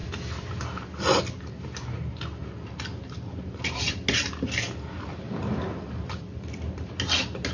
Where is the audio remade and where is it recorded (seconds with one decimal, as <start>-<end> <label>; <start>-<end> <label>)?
0.0-7.5 recorded